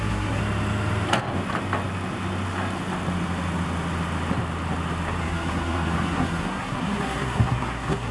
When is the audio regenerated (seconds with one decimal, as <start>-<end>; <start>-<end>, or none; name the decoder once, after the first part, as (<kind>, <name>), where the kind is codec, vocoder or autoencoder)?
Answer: 0.0-0.4 (codec, SNAC); 5.2-8.1